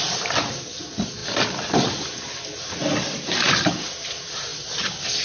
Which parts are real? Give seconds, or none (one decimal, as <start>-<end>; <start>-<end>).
0.0-5.2